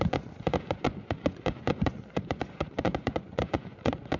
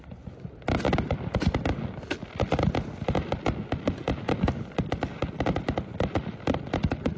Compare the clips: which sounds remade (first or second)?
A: first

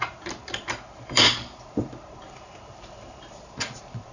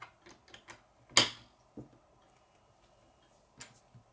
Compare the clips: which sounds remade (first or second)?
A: first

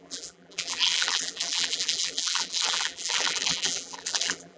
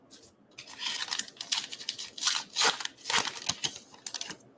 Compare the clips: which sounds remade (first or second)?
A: first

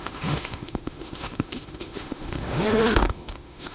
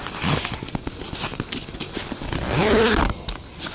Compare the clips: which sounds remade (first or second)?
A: first